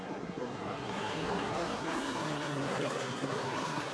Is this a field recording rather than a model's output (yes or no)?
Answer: no